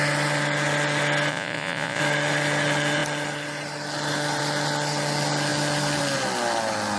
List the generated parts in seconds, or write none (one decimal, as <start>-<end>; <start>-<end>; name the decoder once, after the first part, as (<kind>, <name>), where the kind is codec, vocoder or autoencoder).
1.3-2.0 (vocoder, Vocos)